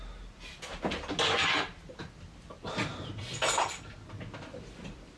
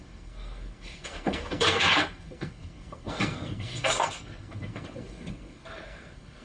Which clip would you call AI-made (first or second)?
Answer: second